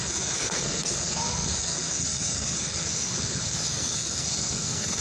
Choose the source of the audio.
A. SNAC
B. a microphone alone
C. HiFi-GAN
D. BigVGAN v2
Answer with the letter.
A